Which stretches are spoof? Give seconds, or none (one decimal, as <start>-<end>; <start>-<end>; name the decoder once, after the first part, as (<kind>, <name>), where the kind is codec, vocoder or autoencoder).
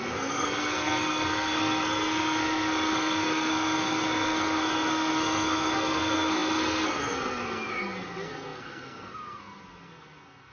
0.0-10.5 (codec, SNAC)